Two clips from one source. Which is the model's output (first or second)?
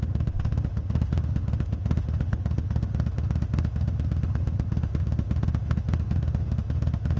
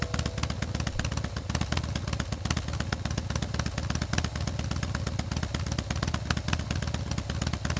first